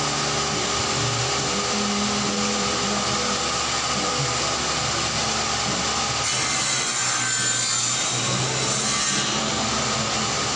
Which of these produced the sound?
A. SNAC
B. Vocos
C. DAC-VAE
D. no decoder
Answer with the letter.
D